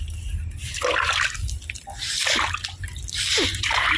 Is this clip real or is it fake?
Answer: real